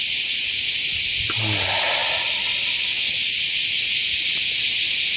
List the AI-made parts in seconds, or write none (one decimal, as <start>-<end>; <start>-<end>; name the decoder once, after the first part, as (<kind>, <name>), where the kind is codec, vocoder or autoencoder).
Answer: none